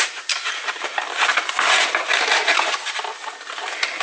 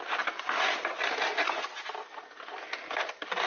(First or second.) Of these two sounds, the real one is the second